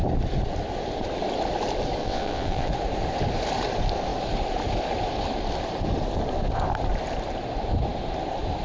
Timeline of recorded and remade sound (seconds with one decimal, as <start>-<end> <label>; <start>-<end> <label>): 0.0-2.0 recorded; 2.0-2.7 remade; 2.7-8.6 recorded